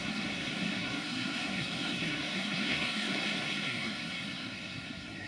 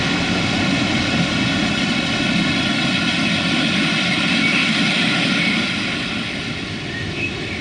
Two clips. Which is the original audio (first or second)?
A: second